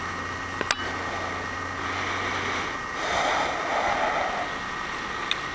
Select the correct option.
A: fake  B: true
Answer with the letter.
B